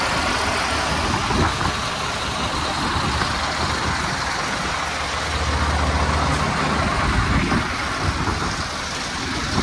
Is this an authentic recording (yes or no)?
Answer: yes